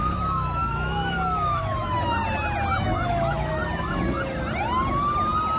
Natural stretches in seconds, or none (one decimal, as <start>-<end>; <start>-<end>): 2.2-2.8; 3.6-5.6